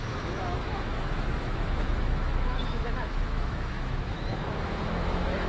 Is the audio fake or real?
fake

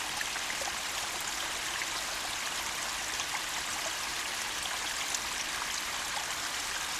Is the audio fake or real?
real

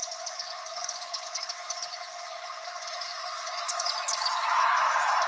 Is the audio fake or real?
fake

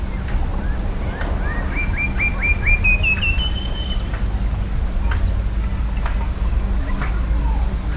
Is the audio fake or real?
real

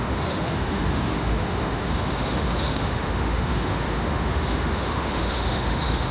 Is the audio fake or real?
fake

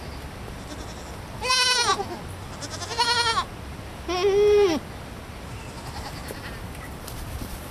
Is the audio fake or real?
real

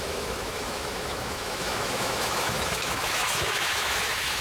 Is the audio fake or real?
fake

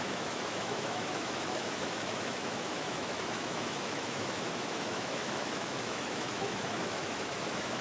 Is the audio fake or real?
fake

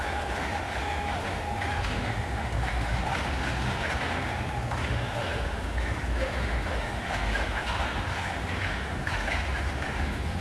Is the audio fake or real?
fake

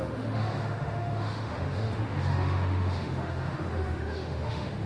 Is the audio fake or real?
fake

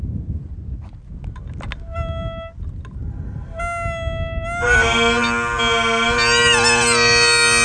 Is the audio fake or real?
real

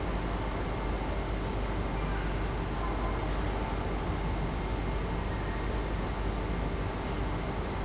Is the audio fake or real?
real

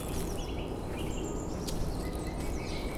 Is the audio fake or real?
real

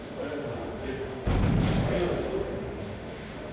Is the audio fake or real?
fake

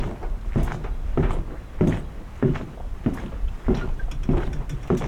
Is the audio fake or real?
real